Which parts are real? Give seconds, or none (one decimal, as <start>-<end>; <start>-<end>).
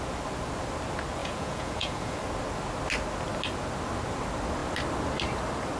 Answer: 0.0-1.2; 2.2-5.8